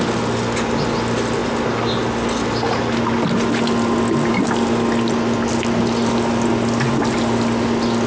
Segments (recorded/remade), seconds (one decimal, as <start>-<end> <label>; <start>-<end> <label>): 0.0-8.1 recorded